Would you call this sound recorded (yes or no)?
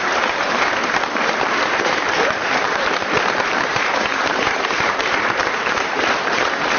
no